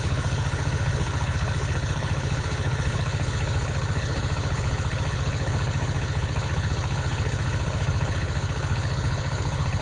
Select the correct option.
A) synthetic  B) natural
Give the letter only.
A